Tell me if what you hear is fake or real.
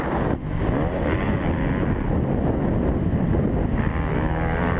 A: real